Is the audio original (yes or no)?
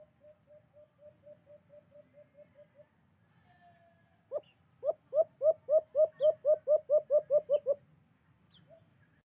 yes